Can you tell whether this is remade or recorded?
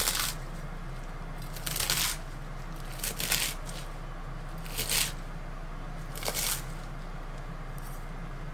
recorded